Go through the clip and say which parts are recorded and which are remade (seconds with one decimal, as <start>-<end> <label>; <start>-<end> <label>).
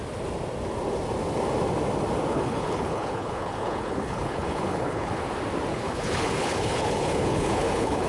0.0-2.3 recorded; 2.3-5.2 remade; 5.2-5.7 recorded; 5.7-8.1 remade